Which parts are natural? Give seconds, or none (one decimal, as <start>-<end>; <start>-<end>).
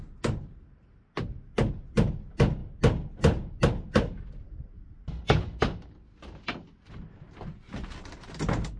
0.0-8.8